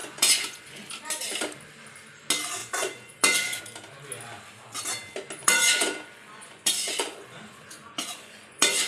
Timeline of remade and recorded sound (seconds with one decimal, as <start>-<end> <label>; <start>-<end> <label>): 0.0-0.9 remade; 0.9-2.6 recorded; 2.6-3.6 remade; 3.6-5.4 recorded; 5.4-8.9 remade